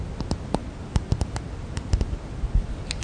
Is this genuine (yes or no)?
yes